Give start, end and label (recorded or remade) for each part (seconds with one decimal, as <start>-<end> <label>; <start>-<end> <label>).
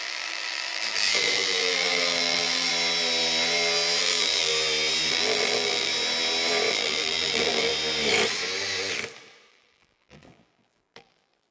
0.0-2.7 remade; 2.7-4.0 recorded; 4.0-4.5 remade; 4.5-5.1 recorded; 5.1-5.9 remade; 5.9-6.7 recorded; 6.7-7.7 remade; 7.7-9.5 recorded; 9.5-11.5 remade